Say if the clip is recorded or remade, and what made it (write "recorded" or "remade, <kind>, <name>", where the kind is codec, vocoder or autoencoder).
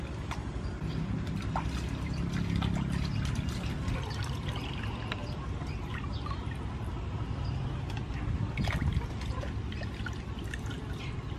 recorded